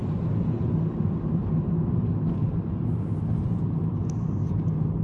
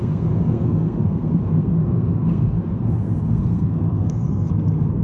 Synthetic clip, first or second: second